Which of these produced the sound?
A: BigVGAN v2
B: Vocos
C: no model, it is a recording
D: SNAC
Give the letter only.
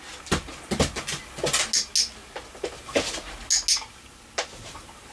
C